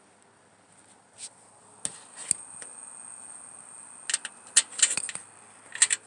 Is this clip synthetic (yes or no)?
no